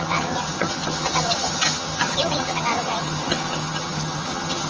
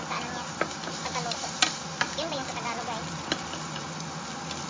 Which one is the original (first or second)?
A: second